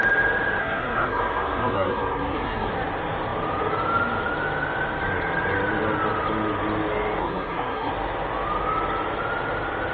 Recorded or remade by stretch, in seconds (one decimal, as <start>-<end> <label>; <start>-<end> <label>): 0.0-0.6 recorded; 0.6-2.7 remade; 2.7-7.2 recorded; 7.2-7.9 remade; 7.9-9.9 recorded